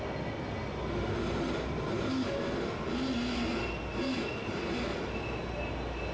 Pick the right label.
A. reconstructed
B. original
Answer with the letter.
B